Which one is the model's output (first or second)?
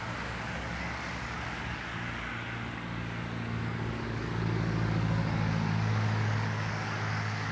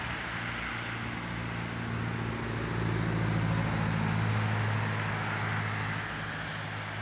first